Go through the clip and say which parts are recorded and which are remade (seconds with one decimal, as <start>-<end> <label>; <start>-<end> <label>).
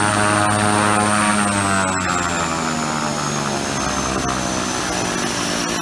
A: 0.0-5.8 recorded